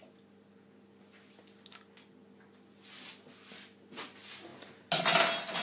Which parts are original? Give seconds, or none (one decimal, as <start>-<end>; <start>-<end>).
0.0-5.6